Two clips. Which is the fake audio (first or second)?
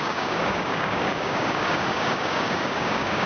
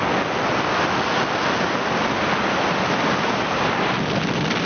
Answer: first